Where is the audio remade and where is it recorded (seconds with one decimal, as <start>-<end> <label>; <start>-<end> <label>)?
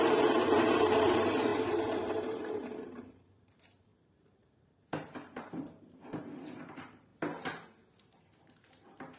0.0-7.1 remade; 7.1-9.2 recorded